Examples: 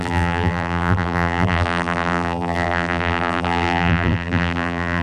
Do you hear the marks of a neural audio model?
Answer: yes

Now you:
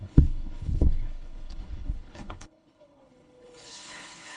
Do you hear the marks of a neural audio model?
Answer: yes